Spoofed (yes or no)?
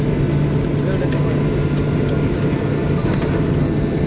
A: no